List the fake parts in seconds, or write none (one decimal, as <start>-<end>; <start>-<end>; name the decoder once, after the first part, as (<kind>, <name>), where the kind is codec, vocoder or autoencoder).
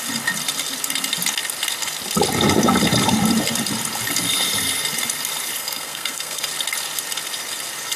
5.6-6.4 (codec, SNAC)